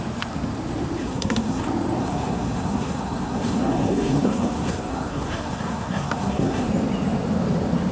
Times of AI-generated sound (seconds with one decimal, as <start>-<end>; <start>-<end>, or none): 1.0-1.6; 2.0-6.7